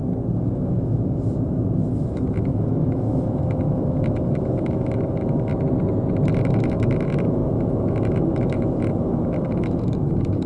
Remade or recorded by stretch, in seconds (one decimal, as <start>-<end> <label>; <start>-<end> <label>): 0.0-5.5 remade; 5.5-6.3 recorded; 6.3-10.5 remade